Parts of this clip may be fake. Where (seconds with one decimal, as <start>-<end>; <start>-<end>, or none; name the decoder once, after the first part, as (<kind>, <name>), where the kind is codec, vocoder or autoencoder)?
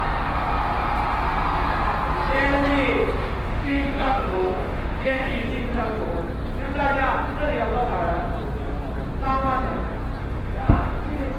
3.2-5.5 (autoencoder, DAC-VAE); 10.2-11.0